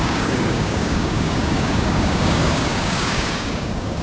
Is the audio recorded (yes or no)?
no